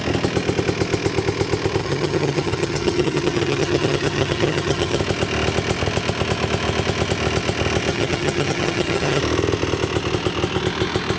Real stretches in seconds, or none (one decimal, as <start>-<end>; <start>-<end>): 0.0-1.8; 5.0-7.9; 9.2-11.2